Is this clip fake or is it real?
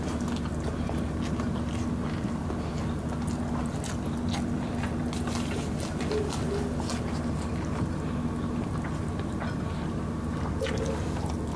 real